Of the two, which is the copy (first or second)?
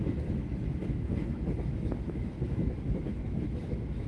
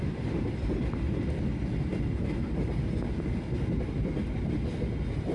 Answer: first